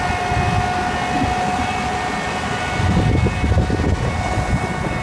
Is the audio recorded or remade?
recorded